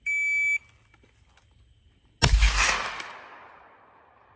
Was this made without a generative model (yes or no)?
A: yes